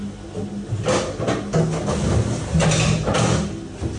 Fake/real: real